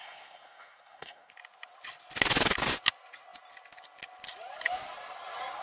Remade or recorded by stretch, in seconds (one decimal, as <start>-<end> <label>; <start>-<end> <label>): 0.0-1.3 remade; 1.3-5.6 recorded